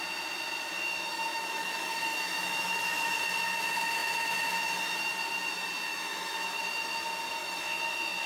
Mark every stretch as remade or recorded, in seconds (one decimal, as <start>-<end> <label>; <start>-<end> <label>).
0.0-1.3 recorded; 1.3-3.1 remade; 3.1-5.9 recorded; 5.9-6.6 remade; 6.6-7.4 recorded; 7.4-8.3 remade